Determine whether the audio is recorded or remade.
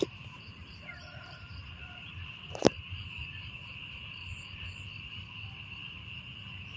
remade